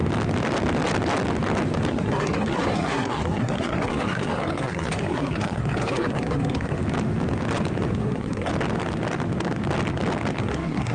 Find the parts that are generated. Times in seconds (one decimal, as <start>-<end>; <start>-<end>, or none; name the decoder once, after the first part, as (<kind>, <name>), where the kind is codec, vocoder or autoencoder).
1.9-6.8 (codec, SNAC); 7.9-8.5; 10.4-10.9